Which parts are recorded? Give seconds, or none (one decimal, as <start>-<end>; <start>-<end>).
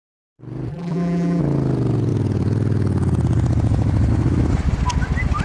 0.0-0.7; 1.4-5.4